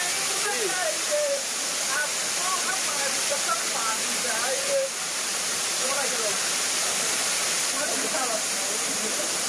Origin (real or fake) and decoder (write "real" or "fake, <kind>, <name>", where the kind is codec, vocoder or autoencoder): fake, vocoder, BigVGAN v2